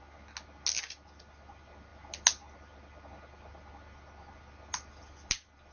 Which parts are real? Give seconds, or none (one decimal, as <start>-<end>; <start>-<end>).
0.0-5.7